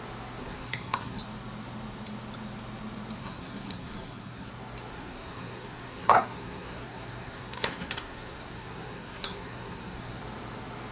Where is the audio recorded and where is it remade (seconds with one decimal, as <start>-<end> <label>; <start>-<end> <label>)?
0.0-0.4 recorded; 0.4-1.2 remade; 1.2-3.2 recorded; 3.2-4.5 remade; 4.5-4.9 recorded; 4.9-10.2 remade; 10.2-10.9 recorded